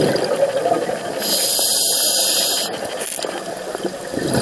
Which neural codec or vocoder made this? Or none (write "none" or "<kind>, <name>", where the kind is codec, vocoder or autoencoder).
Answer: none